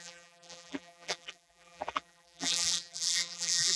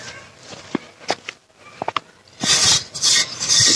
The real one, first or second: second